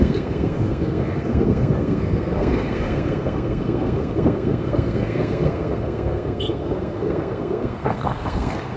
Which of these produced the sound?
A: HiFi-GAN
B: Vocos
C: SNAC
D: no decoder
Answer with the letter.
C